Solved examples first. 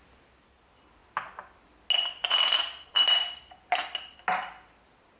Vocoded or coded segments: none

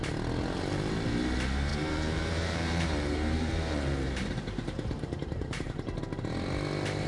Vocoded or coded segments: 1.7-6.0

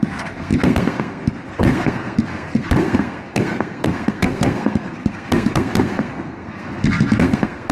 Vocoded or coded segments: 0.0-7.7

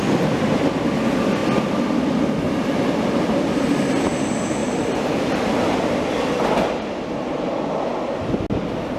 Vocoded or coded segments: 4.6-6.0

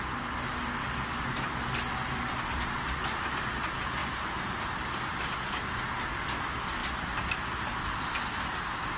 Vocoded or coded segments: 4.0-4.8